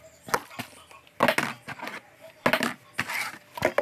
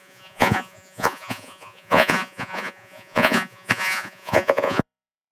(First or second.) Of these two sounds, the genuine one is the first